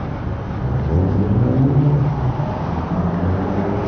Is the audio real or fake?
real